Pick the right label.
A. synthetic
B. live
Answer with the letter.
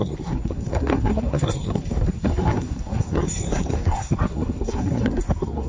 A